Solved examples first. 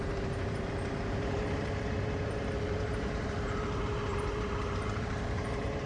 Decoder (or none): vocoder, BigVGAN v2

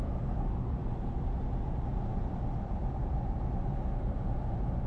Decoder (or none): vocoder, BigVGAN v2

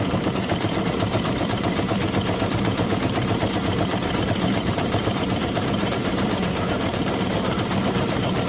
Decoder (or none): vocoder, BigVGAN v2